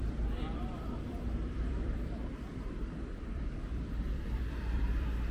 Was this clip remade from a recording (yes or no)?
yes